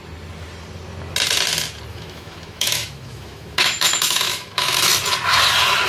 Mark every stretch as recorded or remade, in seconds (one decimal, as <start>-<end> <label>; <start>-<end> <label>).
0.0-1.9 recorded; 1.9-4.9 remade; 4.9-5.9 recorded